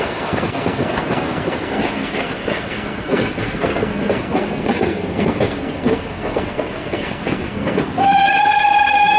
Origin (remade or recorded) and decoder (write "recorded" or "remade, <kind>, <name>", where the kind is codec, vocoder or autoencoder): remade, codec, SNAC